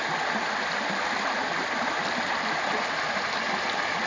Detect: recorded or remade recorded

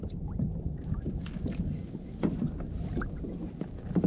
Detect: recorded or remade recorded